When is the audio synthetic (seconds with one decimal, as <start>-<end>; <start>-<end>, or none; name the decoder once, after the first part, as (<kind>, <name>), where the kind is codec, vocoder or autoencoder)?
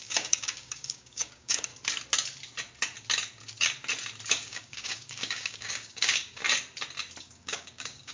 0.0-1.7 (codec, DAC); 4.3-6.4; 7.2-8.1